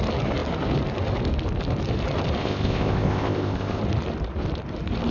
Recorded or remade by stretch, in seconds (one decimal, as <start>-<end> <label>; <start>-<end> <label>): 0.0-2.4 recorded; 2.4-3.8 remade; 3.8-5.1 recorded